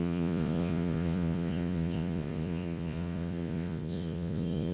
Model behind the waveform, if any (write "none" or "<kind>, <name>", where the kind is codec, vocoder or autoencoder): vocoder, Vocos